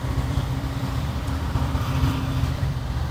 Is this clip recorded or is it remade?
remade